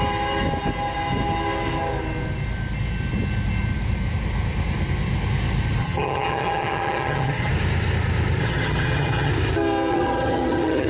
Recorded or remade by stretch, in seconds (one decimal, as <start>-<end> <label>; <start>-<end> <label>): 0.0-5.8 recorded; 5.8-7.5 remade; 7.5-8.4 recorded; 8.4-9.3 remade; 9.3-9.9 recorded; 9.9-10.9 remade